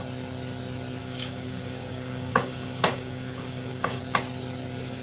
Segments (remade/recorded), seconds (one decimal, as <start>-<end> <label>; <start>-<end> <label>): 0.0-1.0 recorded; 1.0-4.0 remade; 4.0-5.0 recorded